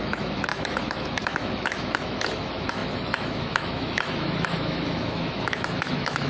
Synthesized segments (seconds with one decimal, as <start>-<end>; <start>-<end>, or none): 0.0-6.3